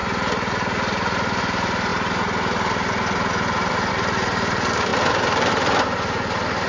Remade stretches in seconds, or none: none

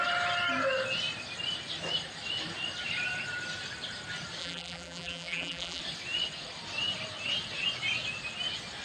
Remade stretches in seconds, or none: 4.4-5.8 (vocoder, BigVGAN v2)

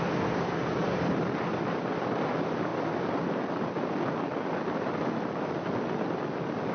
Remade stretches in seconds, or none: 0.0-6.7 (vocoder, BigVGAN v2)

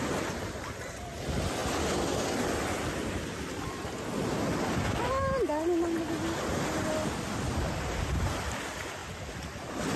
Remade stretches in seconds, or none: none

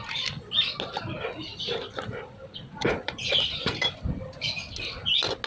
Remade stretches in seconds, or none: 1.5-4.5 (vocoder, BigVGAN v2)

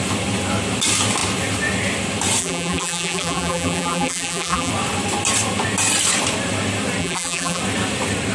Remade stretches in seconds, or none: 2.4-4.7 (vocoder, BigVGAN v2); 7.0-7.6

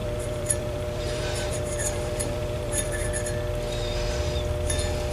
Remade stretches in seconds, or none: 0.0-3.1 (vocoder, BigVGAN v2)